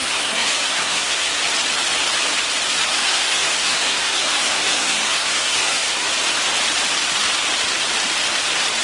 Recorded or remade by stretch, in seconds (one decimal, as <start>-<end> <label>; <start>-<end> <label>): 0.0-1.4 remade; 1.4-2.9 recorded; 2.9-6.1 remade; 6.1-8.8 recorded